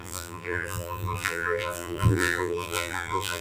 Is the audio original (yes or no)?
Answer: no